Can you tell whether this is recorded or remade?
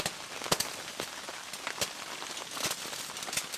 recorded